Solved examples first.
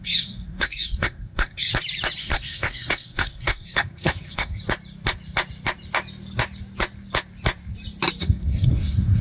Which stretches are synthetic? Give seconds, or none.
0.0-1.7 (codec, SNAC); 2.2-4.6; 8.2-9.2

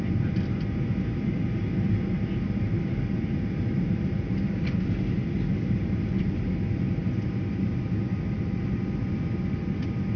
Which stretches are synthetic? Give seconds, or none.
none

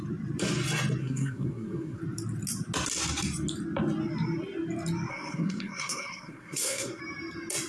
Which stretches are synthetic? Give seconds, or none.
1.0-2.0 (codec, SNAC); 5.1-7.0

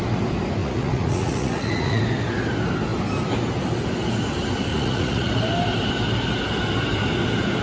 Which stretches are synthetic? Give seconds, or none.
0.6-2.0 (vocoder, Vocos); 4.7-5.3

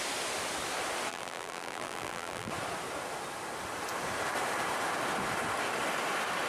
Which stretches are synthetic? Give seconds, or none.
1.1-2.5 (vocoder, BigVGAN v2)

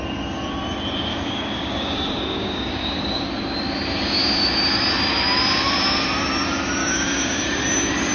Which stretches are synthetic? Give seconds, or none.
1.1-3.3 (codec, DAC); 6.8-7.4